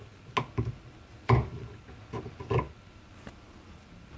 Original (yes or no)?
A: yes